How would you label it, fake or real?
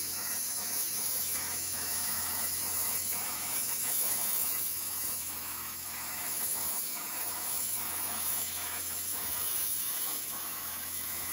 fake